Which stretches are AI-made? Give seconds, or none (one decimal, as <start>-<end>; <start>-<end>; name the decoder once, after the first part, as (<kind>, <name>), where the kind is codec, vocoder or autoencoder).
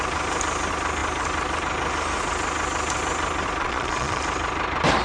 3.6-4.2 (vocoder, Vocos)